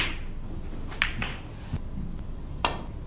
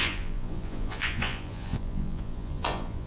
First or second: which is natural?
first